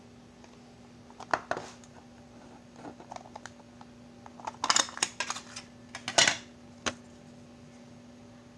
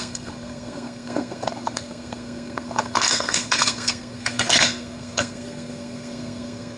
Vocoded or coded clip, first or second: second